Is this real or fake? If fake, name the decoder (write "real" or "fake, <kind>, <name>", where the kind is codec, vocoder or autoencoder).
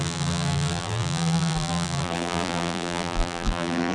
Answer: fake, vocoder, BigVGAN v2